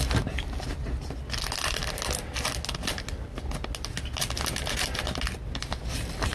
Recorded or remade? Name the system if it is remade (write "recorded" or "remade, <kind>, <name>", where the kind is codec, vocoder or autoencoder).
recorded